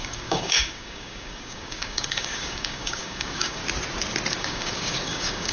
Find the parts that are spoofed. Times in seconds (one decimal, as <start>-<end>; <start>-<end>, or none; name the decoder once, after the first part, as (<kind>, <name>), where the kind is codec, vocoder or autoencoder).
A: 0.0-3.6 (codec, DAC); 4.3-5.5